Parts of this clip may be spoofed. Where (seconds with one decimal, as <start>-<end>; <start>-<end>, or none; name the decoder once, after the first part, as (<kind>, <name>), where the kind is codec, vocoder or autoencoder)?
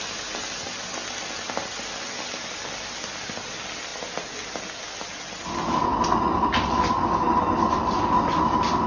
none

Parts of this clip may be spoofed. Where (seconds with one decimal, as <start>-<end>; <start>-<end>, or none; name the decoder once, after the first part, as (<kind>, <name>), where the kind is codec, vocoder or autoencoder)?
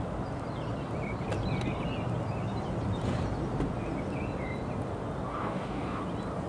5.3-6.0 (codec, DAC)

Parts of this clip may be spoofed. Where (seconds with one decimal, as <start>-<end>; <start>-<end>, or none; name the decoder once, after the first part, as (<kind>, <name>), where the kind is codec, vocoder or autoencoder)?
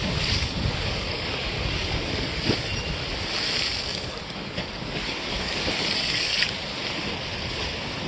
0.0-2.4 (codec, DAC); 3.9-6.5